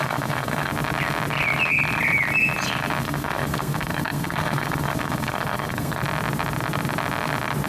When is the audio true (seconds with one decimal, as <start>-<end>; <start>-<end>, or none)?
0.7-3.0; 6.0-7.7